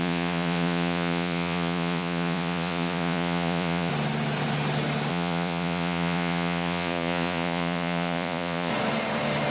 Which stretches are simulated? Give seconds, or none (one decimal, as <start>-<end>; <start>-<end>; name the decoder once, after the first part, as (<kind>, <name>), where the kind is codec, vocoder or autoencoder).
0.0-3.9 (vocoder, Vocos); 5.1-8.7